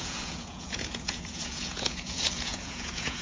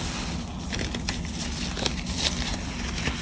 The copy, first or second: first